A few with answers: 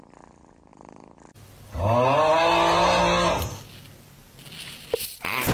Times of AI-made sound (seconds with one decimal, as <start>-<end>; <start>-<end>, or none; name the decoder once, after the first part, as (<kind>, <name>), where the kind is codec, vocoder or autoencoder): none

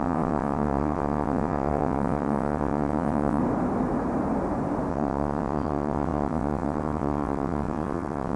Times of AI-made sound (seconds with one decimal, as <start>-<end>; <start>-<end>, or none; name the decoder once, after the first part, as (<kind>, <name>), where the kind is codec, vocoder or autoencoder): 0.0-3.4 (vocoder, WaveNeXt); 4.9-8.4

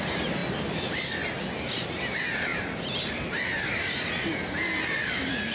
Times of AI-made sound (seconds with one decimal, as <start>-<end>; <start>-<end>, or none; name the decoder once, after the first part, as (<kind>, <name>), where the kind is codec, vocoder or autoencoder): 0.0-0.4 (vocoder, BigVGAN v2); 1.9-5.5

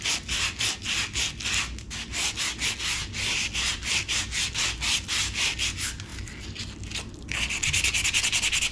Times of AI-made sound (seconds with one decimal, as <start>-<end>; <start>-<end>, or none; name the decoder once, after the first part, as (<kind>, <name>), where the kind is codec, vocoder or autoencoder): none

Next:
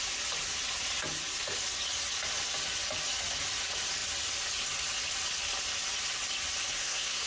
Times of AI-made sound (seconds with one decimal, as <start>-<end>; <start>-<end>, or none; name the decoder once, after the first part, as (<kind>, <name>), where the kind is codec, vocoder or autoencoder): 6.7-7.3 (codec, SNAC)

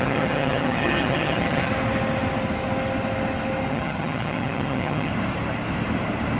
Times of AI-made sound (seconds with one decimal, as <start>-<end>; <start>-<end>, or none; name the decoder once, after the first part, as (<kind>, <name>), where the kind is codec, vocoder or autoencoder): 0.0-1.7 (vocoder, HiFi-GAN); 3.7-5.1

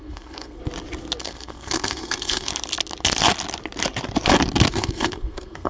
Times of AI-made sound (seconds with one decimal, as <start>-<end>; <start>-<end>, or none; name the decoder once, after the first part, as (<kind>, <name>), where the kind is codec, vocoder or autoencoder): 0.0-0.6 (codec, SNAC); 1.2-2.5; 4.7-5.7